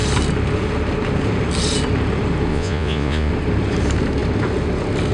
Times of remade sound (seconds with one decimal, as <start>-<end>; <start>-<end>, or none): 2.5-3.3